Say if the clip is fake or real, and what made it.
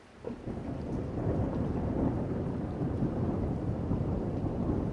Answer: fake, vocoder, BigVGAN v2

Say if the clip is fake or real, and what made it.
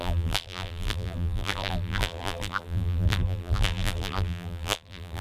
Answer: fake, vocoder, BigVGAN v2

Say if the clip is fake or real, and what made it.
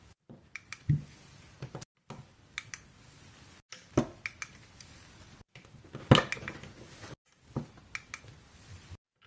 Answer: real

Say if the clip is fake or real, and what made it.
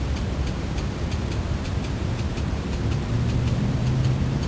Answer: fake, vocoder, BigVGAN v2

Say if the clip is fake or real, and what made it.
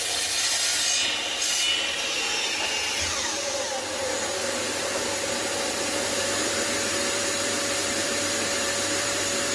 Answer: fake, vocoder, BigVGAN v2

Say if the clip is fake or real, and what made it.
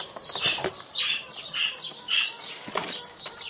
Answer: fake, vocoder, BigVGAN v2